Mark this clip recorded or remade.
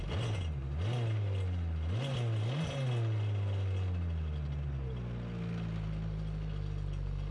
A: recorded